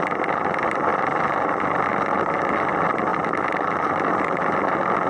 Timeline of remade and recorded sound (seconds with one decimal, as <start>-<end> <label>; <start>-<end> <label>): 0.0-0.9 recorded; 0.9-1.9 remade; 1.9-3.1 recorded; 3.1-4.1 remade; 4.1-5.1 recorded